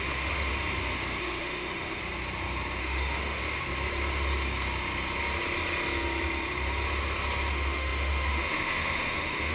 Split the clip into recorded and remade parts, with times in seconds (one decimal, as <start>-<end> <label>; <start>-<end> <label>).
0.0-0.5 remade; 0.5-1.2 recorded; 1.2-2.0 remade; 2.0-2.8 recorded; 2.8-3.4 remade; 3.4-7.5 recorded; 7.5-9.5 remade